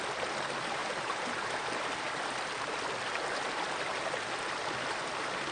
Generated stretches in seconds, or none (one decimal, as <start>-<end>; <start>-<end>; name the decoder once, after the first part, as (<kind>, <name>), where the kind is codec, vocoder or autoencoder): 0.8-1.6 (vocoder, BigVGAN v2)